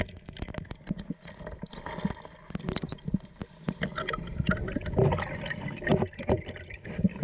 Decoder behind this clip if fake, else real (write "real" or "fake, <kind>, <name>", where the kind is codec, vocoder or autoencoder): real